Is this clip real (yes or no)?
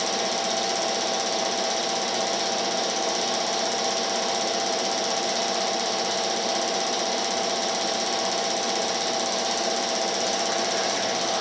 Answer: yes